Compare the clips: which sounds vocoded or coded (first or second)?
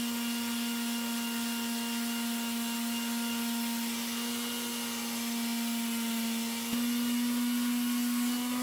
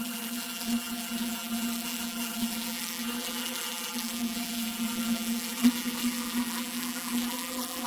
second